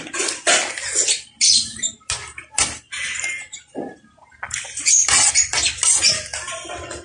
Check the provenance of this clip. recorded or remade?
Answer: recorded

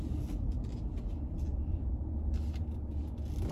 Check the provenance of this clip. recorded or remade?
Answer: recorded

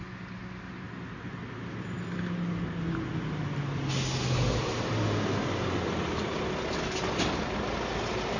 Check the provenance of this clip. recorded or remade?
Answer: recorded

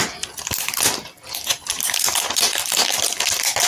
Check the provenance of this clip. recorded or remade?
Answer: recorded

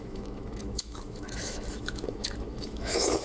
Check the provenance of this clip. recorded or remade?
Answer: remade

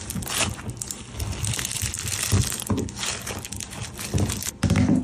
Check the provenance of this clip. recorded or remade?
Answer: recorded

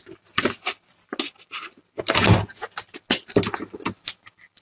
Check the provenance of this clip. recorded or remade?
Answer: recorded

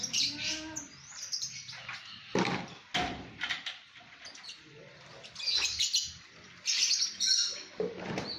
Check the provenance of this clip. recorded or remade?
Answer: recorded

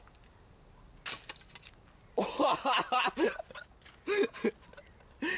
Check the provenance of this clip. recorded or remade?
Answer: recorded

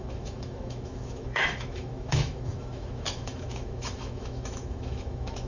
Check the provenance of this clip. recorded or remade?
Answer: remade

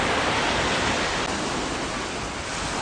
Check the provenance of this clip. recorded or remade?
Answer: recorded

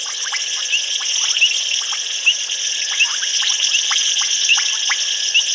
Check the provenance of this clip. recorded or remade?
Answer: recorded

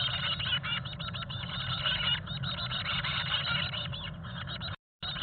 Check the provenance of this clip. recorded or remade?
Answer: recorded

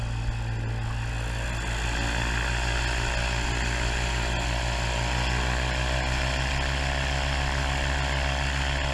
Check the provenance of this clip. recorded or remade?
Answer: recorded